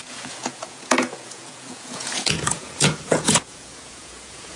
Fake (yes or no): yes